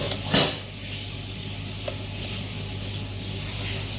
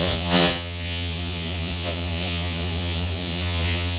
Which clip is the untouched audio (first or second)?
first